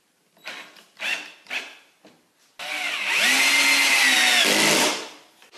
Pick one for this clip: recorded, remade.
recorded